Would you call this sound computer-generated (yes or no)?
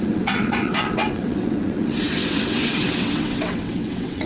yes